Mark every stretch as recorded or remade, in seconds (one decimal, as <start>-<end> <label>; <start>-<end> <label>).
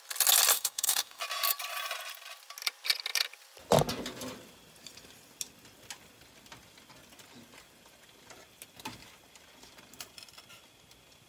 0.0-0.5 recorded; 0.5-1.2 remade; 1.2-11.3 recorded